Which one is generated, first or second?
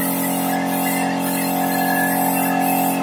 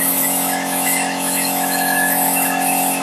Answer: second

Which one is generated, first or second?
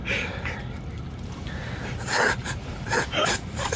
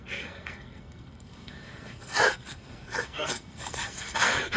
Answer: second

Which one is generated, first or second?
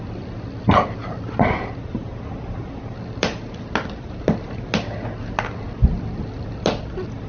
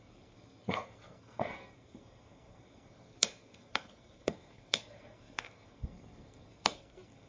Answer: second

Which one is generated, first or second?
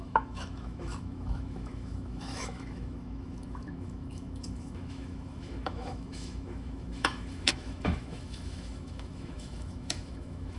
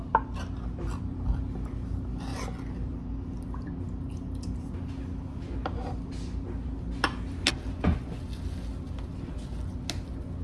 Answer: first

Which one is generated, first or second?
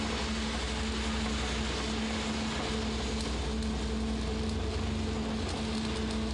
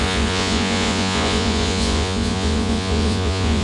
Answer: second